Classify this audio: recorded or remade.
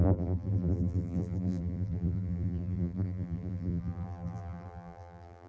remade